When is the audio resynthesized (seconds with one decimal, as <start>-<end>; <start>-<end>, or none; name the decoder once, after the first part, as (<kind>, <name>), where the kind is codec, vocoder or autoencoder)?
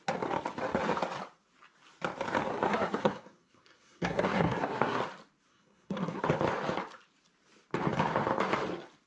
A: 2.5-5.0 (codec, SNAC); 5.5-6.2